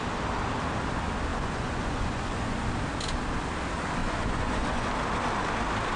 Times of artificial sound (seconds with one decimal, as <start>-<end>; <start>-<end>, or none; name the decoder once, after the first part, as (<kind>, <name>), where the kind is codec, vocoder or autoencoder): 1.3-2.7 (vocoder, Vocos); 4.0-4.9